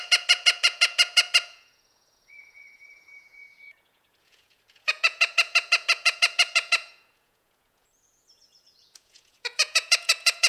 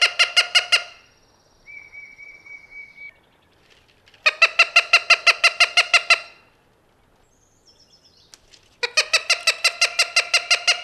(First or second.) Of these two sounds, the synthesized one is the first